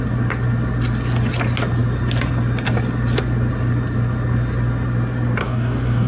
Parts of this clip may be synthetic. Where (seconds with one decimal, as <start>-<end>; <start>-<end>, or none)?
5.4-6.1